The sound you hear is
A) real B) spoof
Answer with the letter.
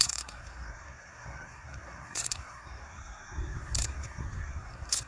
B